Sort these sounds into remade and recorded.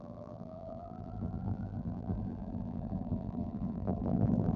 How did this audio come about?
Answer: remade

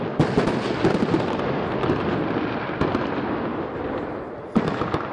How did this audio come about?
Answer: recorded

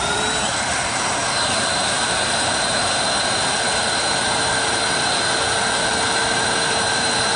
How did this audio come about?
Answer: remade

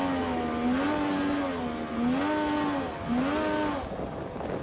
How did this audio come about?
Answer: recorded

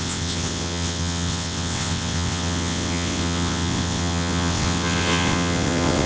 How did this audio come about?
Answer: remade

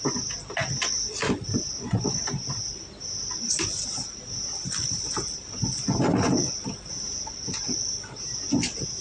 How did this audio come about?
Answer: recorded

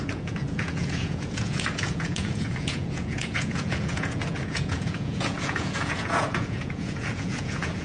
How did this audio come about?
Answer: remade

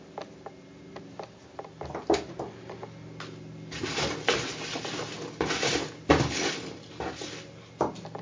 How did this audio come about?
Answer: recorded